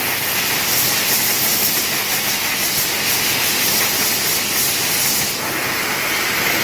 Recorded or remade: recorded